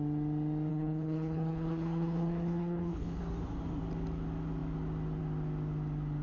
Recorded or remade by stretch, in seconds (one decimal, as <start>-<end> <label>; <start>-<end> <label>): 0.0-0.7 recorded; 0.7-3.2 remade; 3.2-6.2 recorded